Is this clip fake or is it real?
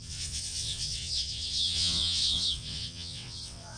fake